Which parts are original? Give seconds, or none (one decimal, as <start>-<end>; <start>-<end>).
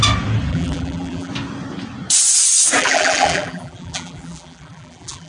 0.0-0.5; 1.3-2.8